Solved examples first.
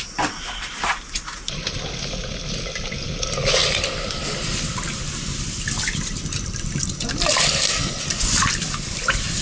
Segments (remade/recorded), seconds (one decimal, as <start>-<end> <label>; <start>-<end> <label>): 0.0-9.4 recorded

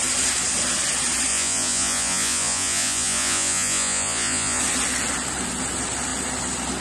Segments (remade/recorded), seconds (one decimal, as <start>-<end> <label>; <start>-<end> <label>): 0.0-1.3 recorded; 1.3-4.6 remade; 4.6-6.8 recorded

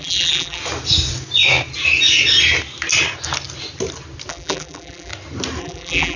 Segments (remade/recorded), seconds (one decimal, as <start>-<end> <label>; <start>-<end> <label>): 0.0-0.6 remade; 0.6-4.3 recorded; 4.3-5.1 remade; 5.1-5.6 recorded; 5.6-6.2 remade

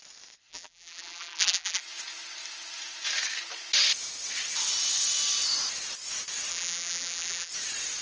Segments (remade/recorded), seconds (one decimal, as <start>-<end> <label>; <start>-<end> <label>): 0.0-0.5 recorded; 0.5-1.8 remade; 1.8-6.5 recorded; 6.5-7.5 remade; 7.5-8.0 recorded

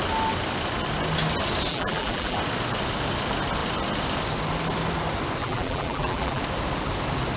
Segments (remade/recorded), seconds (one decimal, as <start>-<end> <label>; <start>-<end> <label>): 0.0-1.7 recorded; 1.7-2.4 remade; 2.4-5.4 recorded; 5.4-6.4 remade; 6.4-7.4 recorded

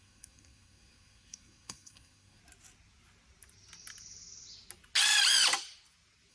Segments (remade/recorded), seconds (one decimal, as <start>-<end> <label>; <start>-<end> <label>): 0.0-2.4 remade; 2.4-6.3 recorded

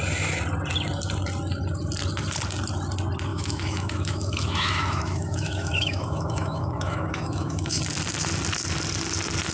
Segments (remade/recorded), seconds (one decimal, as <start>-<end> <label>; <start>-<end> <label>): 0.0-3.3 recorded; 3.3-7.8 remade; 7.8-9.5 recorded

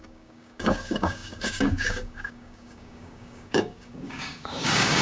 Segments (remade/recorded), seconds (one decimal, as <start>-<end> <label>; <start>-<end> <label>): 0.0-5.0 remade